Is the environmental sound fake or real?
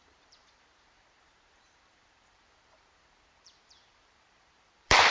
fake